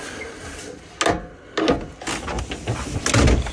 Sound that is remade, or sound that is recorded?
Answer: recorded